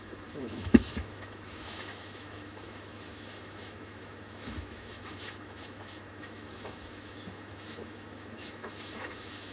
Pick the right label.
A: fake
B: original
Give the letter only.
A